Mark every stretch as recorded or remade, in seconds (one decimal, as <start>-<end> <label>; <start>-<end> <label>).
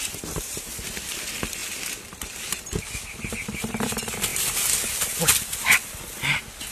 0.0-4.3 remade; 4.3-6.7 recorded